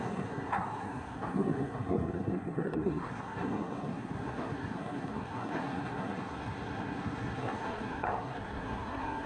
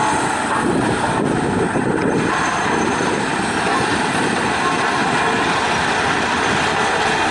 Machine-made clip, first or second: first